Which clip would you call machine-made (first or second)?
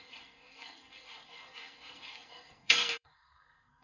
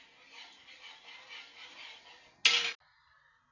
first